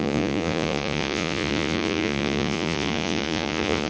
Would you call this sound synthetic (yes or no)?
yes